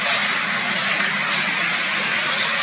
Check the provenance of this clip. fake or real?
real